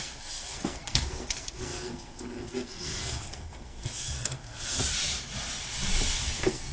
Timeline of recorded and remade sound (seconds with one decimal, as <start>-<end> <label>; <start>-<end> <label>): 0.0-4.8 remade; 4.8-6.2 recorded; 6.2-6.7 remade